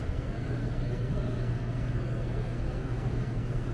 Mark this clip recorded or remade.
remade